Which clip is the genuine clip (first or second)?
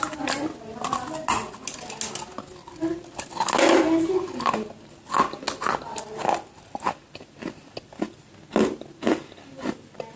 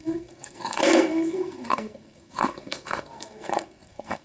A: first